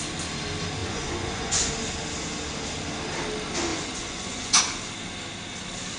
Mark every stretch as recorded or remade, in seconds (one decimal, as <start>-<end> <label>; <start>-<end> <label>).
0.0-0.8 recorded; 0.8-1.7 remade; 1.7-3.7 recorded; 3.7-4.6 remade; 4.6-6.0 recorded